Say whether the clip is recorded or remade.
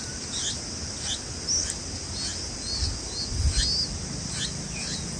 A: recorded